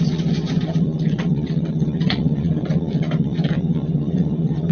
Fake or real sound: fake